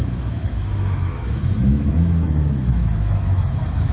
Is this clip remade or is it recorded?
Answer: remade